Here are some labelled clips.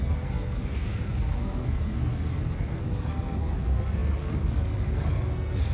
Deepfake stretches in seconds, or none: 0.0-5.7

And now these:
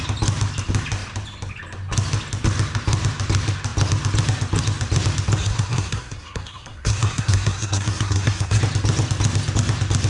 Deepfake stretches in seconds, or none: 5.4-8.6

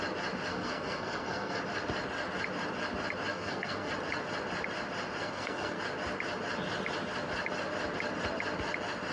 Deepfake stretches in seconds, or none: 0.5-1.6; 3.3-3.9; 5.2-5.8

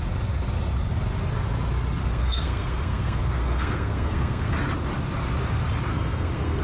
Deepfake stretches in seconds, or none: 2.0-4.5; 5.9-6.6

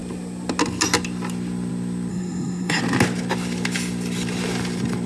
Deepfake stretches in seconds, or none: 2.1-2.8

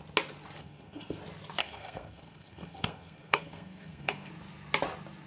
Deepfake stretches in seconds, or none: 0.6-1.2; 1.6-4.3

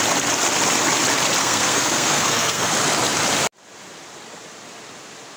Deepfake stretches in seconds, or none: 1.4-2.7